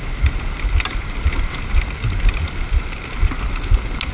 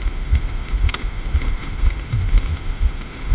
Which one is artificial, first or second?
second